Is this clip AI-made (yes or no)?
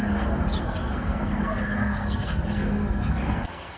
yes